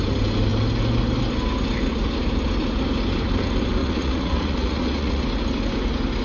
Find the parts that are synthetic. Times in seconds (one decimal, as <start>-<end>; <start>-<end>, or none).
3.8-5.2